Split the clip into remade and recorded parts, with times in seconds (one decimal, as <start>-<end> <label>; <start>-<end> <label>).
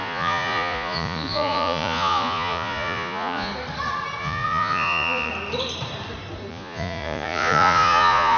0.0-3.5 remade; 3.5-4.2 recorded; 4.2-5.3 remade; 5.3-6.5 recorded; 6.5-8.4 remade